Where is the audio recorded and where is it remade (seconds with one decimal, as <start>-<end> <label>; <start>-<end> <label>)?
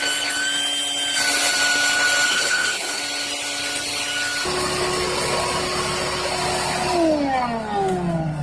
0.0-2.3 recorded; 2.3-3.0 remade; 3.0-8.4 recorded